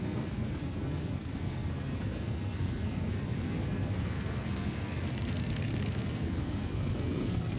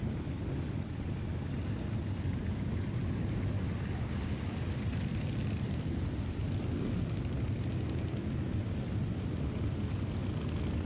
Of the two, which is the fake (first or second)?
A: first